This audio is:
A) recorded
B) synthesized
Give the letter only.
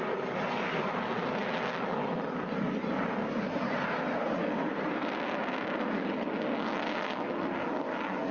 A